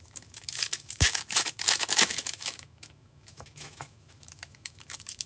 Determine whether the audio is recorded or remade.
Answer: remade